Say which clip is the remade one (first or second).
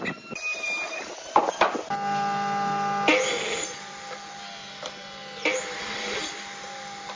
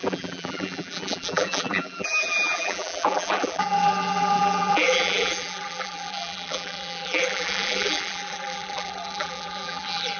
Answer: second